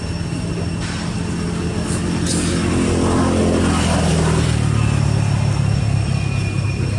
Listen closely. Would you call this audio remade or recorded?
recorded